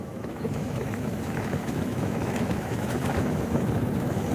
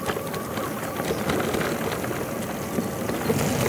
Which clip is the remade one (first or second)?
first